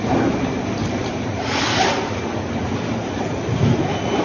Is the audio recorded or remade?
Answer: recorded